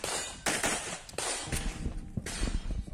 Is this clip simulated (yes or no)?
yes